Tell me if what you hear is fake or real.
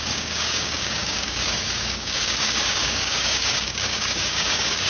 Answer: fake